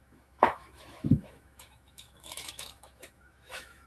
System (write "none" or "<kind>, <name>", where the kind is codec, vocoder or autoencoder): autoencoder, DAC-VAE